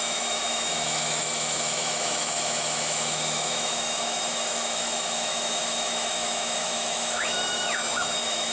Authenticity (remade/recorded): remade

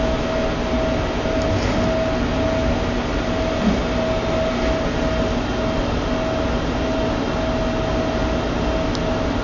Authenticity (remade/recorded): recorded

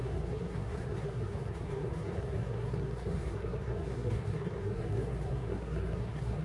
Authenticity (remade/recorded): remade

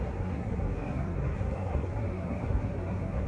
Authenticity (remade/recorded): remade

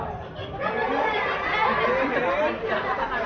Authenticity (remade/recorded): recorded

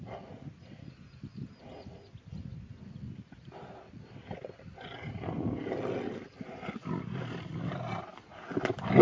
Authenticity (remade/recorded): recorded